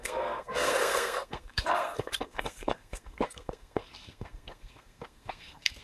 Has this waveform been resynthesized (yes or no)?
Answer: yes